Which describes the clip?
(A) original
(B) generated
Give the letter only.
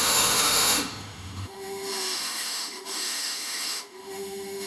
B